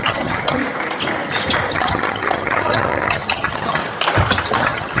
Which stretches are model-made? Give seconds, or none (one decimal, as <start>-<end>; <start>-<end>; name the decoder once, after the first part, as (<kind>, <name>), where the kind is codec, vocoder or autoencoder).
0.0-0.6 (vocoder, HiFi-GAN); 1.7-3.8; 4.5-5.0